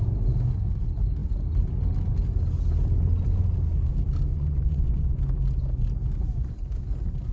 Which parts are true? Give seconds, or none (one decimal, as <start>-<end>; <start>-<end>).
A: 0.0-4.3; 5.2-7.3